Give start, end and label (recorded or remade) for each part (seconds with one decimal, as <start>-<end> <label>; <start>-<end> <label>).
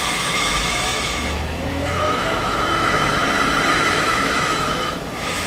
0.0-3.2 remade; 3.2-3.7 recorded; 3.7-5.5 remade